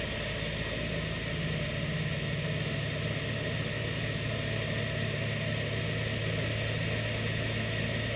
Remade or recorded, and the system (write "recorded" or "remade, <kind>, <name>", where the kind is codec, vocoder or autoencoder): recorded